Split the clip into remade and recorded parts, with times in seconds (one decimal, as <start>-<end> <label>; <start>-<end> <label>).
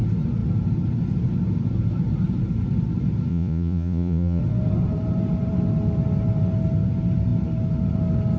0.0-3.3 recorded; 3.3-4.4 remade; 4.4-8.4 recorded